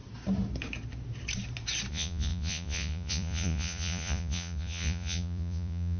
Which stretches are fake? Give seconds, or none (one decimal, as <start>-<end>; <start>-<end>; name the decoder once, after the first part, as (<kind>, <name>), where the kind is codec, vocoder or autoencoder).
1.9-6.0 (vocoder, Vocos)